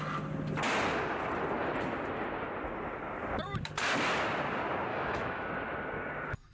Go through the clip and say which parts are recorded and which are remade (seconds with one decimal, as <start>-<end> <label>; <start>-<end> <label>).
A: 0.0-4.9 recorded; 4.9-5.5 remade; 5.5-6.5 recorded

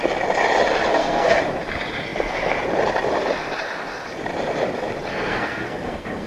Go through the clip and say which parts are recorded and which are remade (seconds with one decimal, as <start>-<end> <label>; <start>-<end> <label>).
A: 0.0-0.9 recorded; 0.9-1.4 remade; 1.4-5.1 recorded; 5.1-6.3 remade

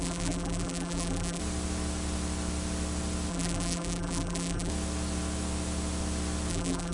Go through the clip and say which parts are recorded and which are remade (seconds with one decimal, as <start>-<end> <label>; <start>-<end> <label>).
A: 0.0-1.4 remade; 1.4-3.3 recorded; 3.3-4.7 remade; 4.7-6.5 recorded; 6.5-6.9 remade

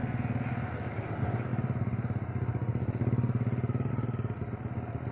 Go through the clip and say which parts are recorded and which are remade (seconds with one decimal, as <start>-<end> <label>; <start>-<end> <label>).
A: 0.0-5.1 recorded